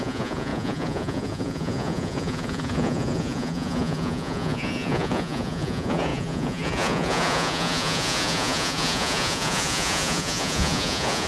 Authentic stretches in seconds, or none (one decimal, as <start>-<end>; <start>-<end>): none